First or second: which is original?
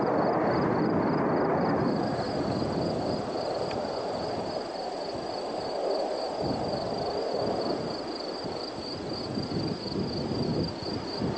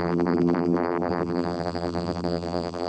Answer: first